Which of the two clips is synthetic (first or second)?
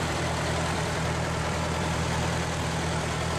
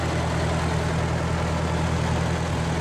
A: first